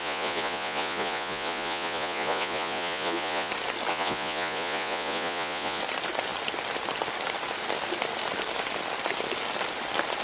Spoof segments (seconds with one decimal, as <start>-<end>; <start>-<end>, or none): 0.0-3.5; 3.9-5.8